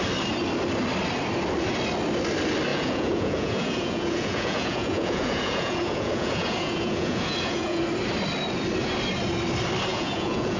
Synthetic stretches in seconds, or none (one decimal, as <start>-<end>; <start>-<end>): 2.7-7.8; 9.9-10.6